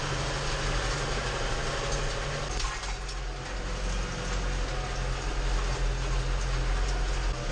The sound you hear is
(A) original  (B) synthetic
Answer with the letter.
A